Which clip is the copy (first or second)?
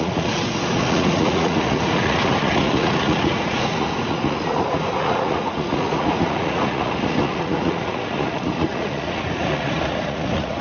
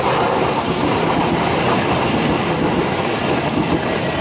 first